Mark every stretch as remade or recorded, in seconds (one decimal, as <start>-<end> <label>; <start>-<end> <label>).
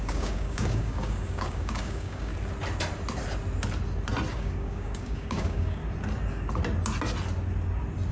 0.0-2.3 remade; 2.3-4.3 recorded; 4.3-5.8 remade; 5.8-8.1 recorded